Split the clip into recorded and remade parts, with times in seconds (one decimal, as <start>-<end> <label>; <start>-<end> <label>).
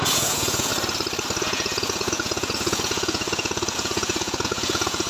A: 0.0-0.7 remade; 0.7-1.4 recorded; 1.4-5.1 remade